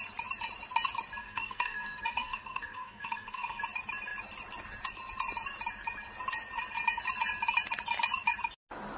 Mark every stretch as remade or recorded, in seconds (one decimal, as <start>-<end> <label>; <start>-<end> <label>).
0.0-1.2 recorded; 1.2-3.6 remade; 3.6-9.0 recorded